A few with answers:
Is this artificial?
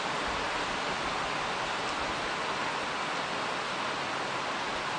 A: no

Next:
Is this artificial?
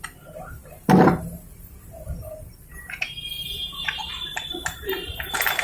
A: no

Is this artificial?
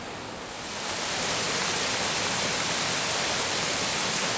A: no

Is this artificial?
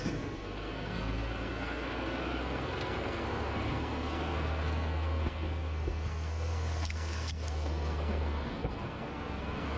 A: yes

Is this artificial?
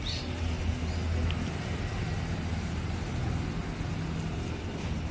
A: no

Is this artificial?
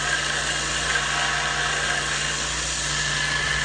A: no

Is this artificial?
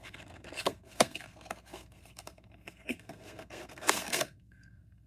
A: yes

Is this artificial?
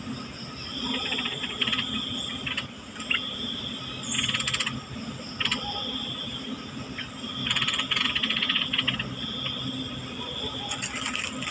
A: no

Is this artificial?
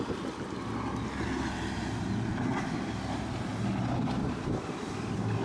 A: no